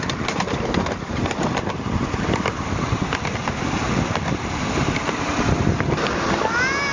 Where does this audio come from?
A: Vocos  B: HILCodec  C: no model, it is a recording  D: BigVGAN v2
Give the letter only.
C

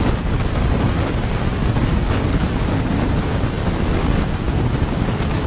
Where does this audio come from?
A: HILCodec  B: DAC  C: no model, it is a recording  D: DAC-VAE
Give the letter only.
C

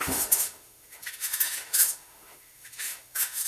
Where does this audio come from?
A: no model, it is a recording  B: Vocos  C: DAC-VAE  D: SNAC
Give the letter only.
C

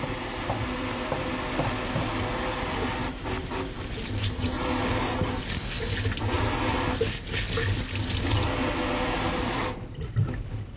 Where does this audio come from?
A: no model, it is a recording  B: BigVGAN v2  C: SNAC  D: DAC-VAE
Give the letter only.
A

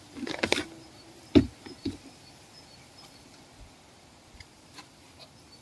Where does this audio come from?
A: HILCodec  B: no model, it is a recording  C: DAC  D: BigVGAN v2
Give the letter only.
D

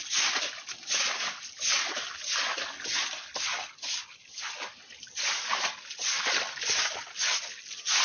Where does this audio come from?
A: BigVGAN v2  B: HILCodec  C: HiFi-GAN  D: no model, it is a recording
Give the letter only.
D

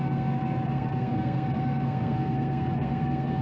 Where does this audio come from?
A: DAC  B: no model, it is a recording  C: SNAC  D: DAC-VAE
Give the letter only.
C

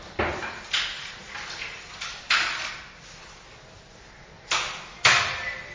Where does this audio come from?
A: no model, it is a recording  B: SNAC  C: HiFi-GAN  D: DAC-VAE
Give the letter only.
A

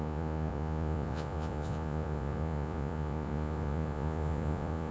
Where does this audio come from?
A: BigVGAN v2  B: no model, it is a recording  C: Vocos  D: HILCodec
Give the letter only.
C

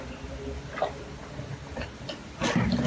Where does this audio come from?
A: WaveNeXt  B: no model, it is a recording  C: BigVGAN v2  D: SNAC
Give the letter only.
B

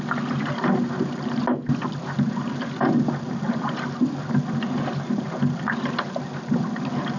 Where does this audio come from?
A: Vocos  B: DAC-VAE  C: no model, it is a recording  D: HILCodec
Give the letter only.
C